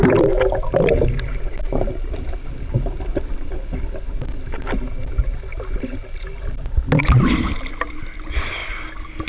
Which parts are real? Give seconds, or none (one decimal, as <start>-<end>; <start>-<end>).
0.0-9.3